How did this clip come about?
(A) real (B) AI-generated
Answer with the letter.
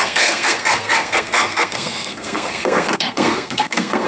B